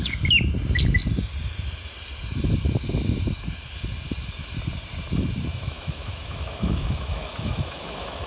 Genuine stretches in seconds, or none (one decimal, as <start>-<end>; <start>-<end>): 0.0-5.5